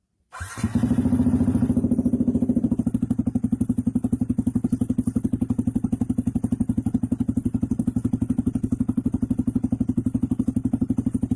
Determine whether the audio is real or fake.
real